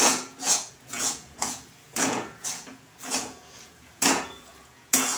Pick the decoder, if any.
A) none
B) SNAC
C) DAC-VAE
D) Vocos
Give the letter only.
D